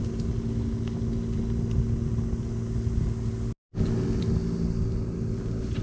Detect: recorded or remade recorded